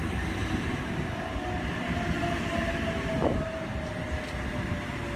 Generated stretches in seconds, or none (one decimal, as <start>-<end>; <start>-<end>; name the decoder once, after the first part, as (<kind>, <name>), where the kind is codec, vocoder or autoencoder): none